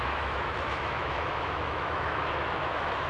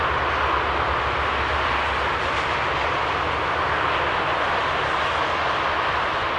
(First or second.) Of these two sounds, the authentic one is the second